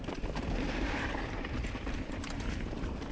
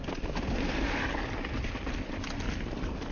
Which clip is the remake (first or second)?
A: first